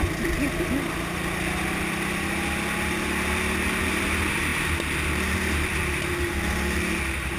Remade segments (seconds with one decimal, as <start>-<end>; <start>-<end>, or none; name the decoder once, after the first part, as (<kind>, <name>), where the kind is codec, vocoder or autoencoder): none